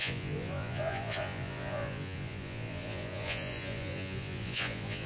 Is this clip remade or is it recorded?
remade